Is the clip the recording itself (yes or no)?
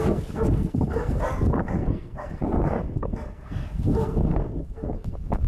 no